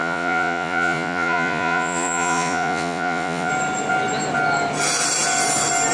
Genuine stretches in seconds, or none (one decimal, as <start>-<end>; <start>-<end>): 3.5-5.9